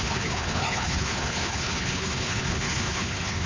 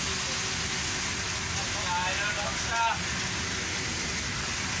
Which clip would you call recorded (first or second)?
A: second